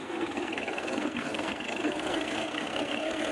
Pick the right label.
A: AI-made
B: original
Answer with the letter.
A